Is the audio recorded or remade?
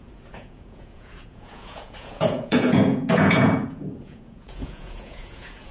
remade